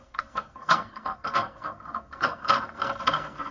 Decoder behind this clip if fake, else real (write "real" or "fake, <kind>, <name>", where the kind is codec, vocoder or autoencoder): fake, codec, SNAC